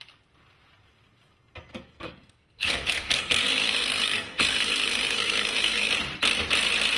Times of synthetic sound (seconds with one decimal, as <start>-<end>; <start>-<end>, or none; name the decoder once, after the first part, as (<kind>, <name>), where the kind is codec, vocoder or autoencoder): 1.7-5.9 (codec, SNAC)